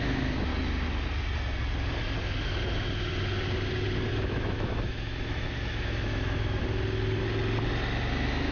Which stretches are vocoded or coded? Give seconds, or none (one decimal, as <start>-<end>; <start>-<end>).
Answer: 0.0-0.5; 4.1-6.6; 8.1-8.5